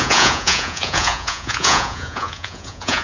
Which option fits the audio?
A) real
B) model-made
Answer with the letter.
B